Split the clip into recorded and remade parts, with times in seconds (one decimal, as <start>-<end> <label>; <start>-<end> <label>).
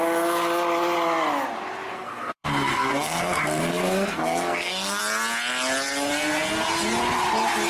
0.0-1.9 recorded; 1.9-5.0 remade; 5.0-7.7 recorded